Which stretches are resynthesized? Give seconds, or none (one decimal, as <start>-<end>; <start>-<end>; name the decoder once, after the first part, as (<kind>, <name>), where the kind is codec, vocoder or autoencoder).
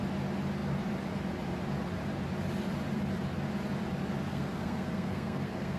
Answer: 4.3-5.8 (codec, SNAC)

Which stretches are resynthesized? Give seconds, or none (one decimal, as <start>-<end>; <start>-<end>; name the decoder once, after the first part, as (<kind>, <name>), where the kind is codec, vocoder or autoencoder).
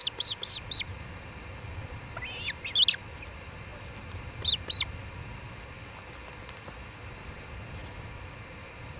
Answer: 0.0-0.7 (vocoder, BigVGAN v2); 1.5-2.0; 7.8-8.3